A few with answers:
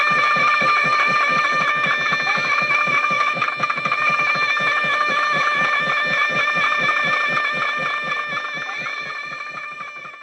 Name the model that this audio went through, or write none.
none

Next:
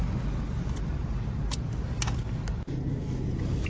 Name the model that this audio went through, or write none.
none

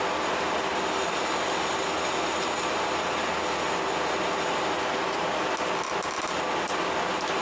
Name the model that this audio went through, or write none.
none